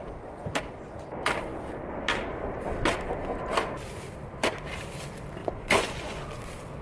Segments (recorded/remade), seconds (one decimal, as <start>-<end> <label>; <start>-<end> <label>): 0.0-5.4 recorded; 5.4-6.2 remade; 6.2-6.8 recorded